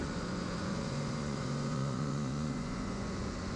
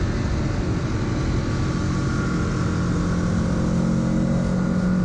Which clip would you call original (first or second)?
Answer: second